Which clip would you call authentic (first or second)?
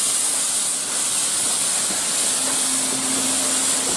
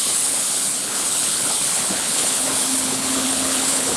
first